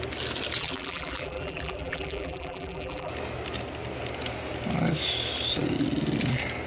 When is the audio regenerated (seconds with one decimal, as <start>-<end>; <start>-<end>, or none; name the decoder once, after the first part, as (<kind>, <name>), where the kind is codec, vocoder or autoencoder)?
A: 0.6-3.1 (vocoder, BigVGAN v2)